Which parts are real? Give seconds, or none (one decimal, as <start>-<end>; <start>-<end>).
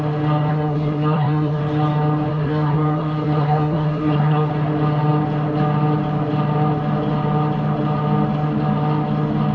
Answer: 0.0-0.5; 1.6-2.3; 4.5-9.5